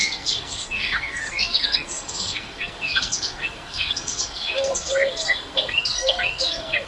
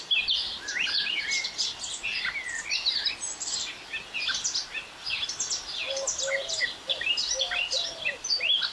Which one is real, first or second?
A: second